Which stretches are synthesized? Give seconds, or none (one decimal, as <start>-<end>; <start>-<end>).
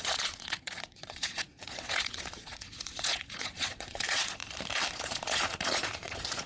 0.0-4.4; 4.9-6.5